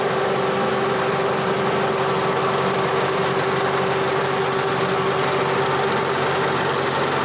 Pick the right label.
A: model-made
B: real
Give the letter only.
B